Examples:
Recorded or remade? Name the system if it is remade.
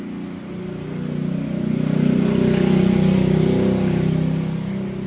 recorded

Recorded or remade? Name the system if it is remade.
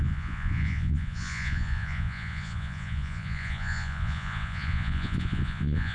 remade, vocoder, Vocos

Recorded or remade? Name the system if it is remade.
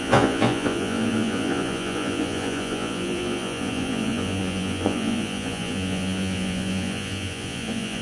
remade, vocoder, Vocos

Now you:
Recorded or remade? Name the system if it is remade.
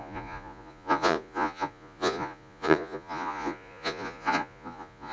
remade, vocoder, Vocos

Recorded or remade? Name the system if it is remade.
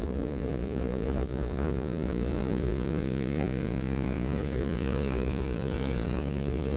remade, vocoder, Vocos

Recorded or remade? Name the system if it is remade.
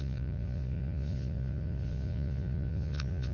remade, vocoder, Vocos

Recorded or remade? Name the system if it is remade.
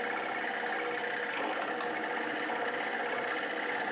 recorded